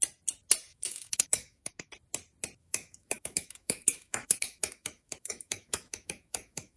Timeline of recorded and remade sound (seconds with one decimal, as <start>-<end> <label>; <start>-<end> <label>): 0.0-0.7 recorded; 0.7-1.9 remade; 1.9-2.6 recorded; 2.6-6.8 remade